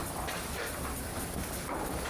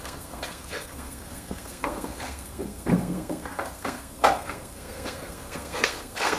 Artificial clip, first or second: second